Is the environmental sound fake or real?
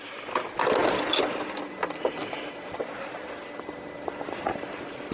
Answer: fake